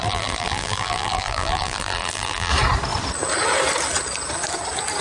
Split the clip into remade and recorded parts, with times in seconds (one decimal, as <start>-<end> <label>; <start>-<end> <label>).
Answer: 0.0-2.5 remade; 2.5-5.0 recorded